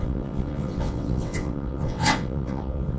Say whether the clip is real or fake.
fake